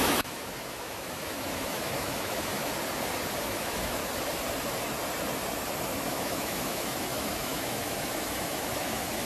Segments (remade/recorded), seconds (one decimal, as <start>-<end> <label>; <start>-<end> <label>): 0.0-2.7 remade; 2.7-3.4 recorded; 3.4-4.0 remade; 4.0-6.1 recorded; 6.1-9.3 remade